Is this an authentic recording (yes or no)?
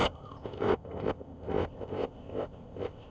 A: no